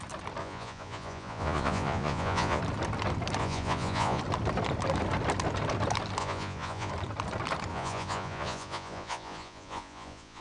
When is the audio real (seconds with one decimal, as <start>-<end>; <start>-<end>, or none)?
0.0-0.4; 2.6-3.4; 4.2-6.2; 6.9-7.7